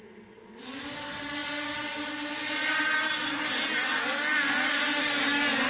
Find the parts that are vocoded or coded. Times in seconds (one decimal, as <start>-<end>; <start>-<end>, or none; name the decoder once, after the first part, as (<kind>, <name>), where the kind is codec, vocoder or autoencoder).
4.3-4.8 (codec, DAC)